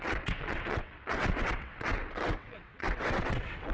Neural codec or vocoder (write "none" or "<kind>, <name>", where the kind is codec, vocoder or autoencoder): vocoder, WaveNeXt